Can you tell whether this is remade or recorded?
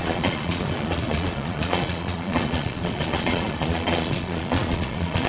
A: remade